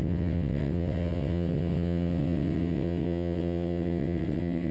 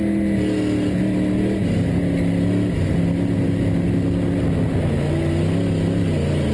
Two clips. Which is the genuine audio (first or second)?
second